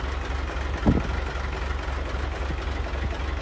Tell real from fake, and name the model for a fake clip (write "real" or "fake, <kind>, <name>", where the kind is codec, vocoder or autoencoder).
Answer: real